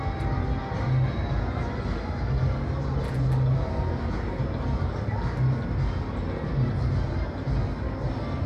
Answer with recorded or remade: recorded